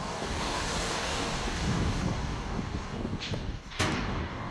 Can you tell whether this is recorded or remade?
remade